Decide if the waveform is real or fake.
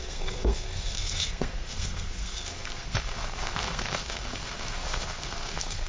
fake